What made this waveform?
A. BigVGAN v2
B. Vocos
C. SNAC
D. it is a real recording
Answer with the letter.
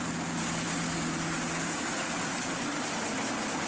D